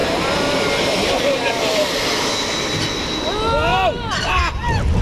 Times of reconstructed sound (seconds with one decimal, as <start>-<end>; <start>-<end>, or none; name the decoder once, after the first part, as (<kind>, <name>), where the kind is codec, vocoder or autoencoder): 3.7-4.4 (vocoder, BigVGAN v2)